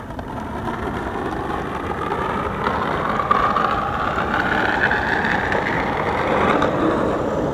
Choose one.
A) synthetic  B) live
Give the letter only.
B